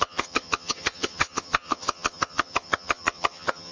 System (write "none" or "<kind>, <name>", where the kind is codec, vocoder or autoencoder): vocoder, HiFi-GAN